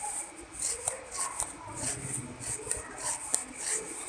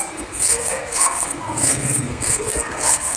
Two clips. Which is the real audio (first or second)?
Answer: first